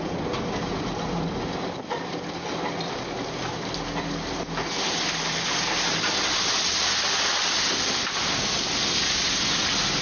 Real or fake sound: real